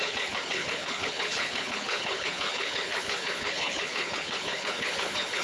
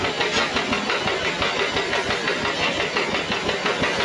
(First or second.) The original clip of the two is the second